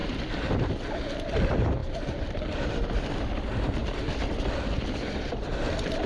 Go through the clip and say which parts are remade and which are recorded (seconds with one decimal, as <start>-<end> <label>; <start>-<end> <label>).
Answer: 0.0-1.1 recorded; 1.1-6.1 remade